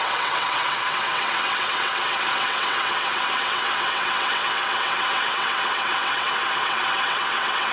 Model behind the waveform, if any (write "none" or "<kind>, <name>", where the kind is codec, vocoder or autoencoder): vocoder, WaveNeXt